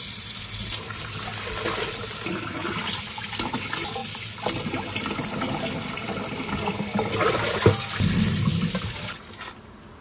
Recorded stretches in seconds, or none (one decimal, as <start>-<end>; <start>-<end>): 0.0-10.0